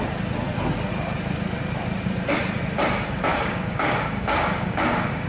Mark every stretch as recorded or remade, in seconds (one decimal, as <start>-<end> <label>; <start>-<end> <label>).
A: 0.0-3.3 recorded; 3.3-5.3 remade